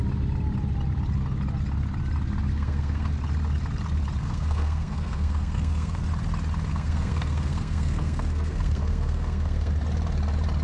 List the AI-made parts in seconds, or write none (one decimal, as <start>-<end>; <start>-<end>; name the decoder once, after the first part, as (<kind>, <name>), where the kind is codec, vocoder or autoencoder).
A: 2.5-3.1 (codec, SNAC); 4.2-6.0; 6.7-9.7